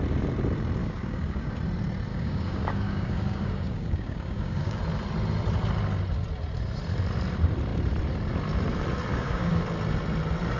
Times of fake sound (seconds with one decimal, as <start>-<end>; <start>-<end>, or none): 0.8-1.5; 2.1-4.8; 9.1-9.6